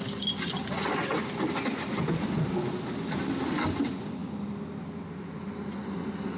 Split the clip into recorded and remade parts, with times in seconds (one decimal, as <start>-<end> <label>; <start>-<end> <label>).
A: 0.0-6.4 recorded